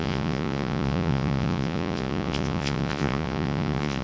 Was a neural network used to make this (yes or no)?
yes